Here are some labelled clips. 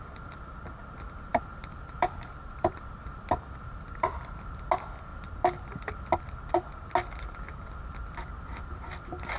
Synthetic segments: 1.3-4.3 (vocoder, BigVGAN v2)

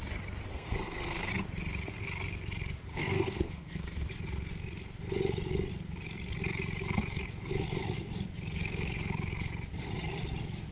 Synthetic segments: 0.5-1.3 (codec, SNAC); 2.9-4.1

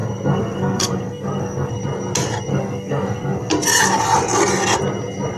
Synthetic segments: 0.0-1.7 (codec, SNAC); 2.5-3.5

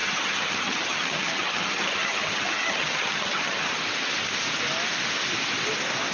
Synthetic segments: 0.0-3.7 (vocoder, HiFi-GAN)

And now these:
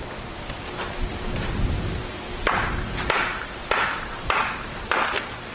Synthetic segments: 1.1-4.4 (vocoder, BigVGAN v2)